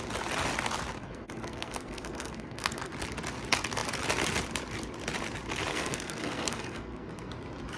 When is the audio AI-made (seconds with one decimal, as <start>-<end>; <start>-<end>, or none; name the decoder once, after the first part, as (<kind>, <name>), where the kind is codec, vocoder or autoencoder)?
1.0-2.9 (codec, SNAC); 5.7-7.3